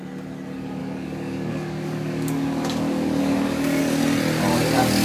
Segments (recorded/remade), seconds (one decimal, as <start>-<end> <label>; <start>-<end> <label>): 0.0-0.8 recorded; 0.8-3.8 remade; 3.8-5.0 recorded